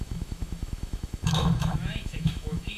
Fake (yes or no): yes